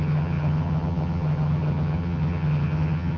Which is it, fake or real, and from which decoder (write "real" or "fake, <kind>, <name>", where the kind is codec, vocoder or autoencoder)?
fake, vocoder, HiFi-GAN